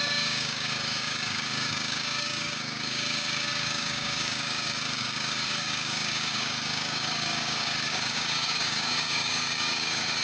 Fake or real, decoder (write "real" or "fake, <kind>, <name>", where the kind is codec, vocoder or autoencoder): fake, codec, DAC